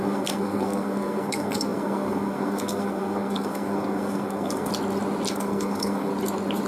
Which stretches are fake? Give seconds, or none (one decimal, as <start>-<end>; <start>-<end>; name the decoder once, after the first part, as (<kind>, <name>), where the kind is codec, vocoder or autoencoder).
0.0-4.7 (codec, SNAC); 5.3-6.1